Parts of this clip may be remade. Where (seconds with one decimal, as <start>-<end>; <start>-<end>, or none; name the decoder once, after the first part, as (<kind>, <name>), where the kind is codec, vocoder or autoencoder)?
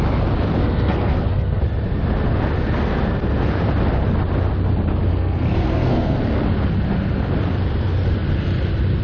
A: 0.6-1.6 (codec, SNAC); 5.1-6.2